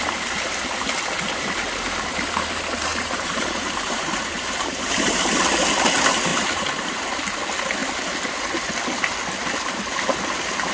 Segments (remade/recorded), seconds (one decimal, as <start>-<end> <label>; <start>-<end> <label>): 0.0-2.9 recorded; 2.9-5.4 remade; 5.4-6.3 recorded; 6.3-7.0 remade; 7.0-10.7 recorded